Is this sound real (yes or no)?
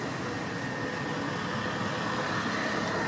yes